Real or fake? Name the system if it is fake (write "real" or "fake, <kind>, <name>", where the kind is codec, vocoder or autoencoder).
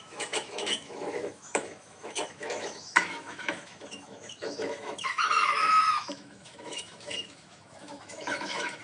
fake, autoencoder, DAC-VAE